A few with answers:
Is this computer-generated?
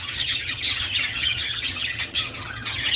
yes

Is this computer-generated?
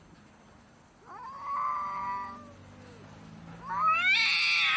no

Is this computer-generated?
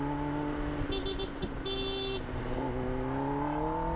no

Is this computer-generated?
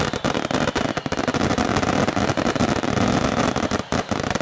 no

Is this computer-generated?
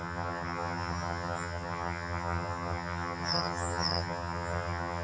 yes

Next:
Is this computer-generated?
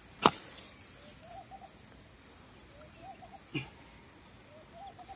no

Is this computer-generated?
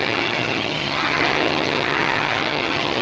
yes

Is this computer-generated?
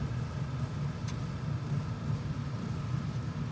no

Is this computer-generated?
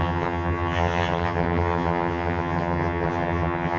yes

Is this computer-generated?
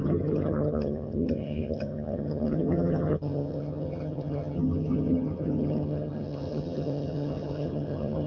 yes